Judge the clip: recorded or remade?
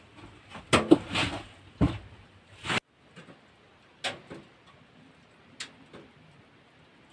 recorded